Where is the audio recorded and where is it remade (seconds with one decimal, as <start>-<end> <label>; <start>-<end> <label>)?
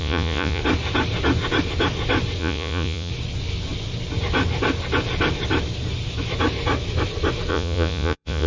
0.0-0.6 remade; 0.6-2.4 recorded; 2.4-3.1 remade; 3.1-7.5 recorded; 7.5-8.5 remade